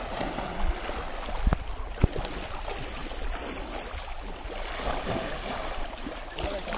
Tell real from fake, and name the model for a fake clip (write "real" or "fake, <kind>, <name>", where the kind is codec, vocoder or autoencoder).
real